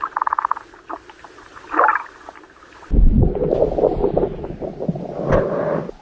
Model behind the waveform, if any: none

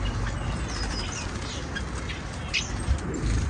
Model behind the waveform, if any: none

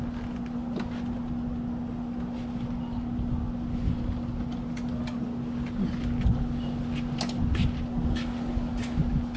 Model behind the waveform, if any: none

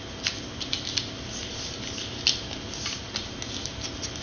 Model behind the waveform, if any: none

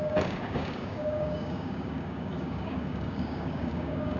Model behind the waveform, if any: codec, DAC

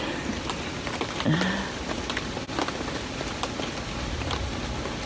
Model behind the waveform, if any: none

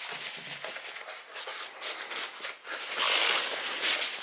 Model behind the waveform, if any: none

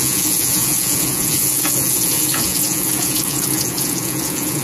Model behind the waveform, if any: vocoder, Vocos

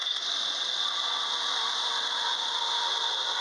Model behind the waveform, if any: none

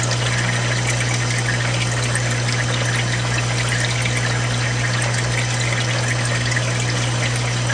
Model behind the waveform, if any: none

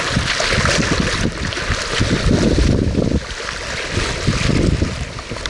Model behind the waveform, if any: none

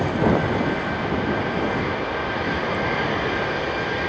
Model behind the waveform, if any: none